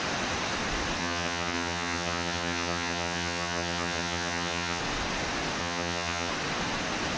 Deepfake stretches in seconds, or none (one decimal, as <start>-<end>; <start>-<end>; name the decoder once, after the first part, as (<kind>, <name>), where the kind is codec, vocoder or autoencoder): 1.0-4.8 (vocoder, HiFi-GAN); 5.6-6.3